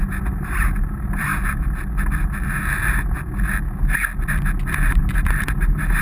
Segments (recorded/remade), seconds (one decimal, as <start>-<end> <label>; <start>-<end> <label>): 0.0-1.3 remade; 1.3-4.9 recorded; 4.9-6.0 remade